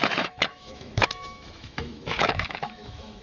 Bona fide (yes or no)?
no